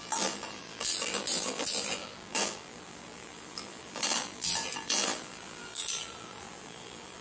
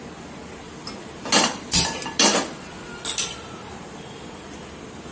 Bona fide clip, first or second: second